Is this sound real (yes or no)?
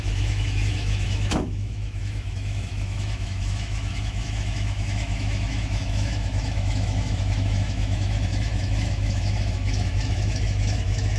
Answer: no